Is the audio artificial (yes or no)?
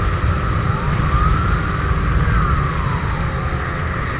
no